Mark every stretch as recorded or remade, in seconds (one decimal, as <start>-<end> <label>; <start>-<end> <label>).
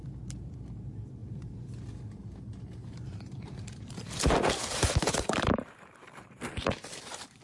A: 0.0-1.2 recorded; 1.2-1.8 remade; 1.8-2.8 recorded; 2.8-7.4 remade